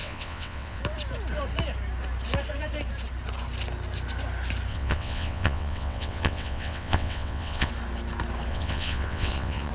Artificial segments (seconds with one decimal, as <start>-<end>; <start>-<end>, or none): 0.0-0.8; 4.7-7.7; 8.5-9.7